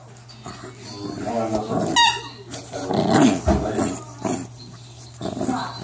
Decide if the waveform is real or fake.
real